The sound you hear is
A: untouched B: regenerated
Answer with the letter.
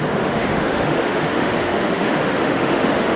B